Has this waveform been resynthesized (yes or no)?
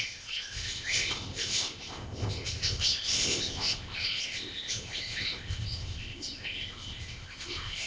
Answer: yes